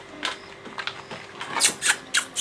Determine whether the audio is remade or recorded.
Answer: recorded